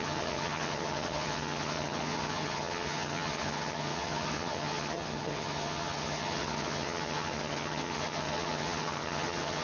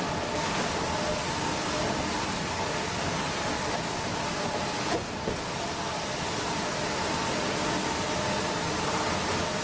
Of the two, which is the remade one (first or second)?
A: first